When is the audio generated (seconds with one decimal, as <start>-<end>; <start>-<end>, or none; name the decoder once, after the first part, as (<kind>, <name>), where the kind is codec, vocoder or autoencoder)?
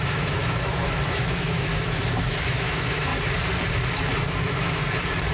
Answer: 0.0-3.1 (autoencoder, DAC-VAE); 4.2-4.8